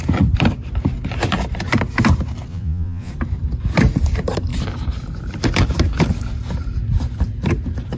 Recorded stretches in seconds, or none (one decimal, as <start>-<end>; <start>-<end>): 0.0-2.5; 3.1-8.0